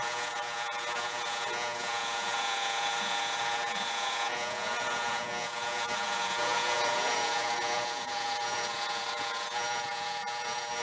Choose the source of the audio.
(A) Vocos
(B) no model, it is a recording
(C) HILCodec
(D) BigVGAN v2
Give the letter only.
A